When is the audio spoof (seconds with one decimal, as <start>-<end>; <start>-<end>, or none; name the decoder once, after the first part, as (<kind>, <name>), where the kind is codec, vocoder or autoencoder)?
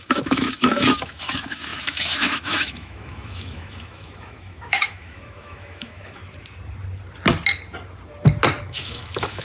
0.0-6.2 (autoencoder, DAC-VAE); 8.6-9.4